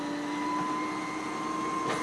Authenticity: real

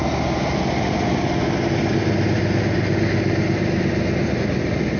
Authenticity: real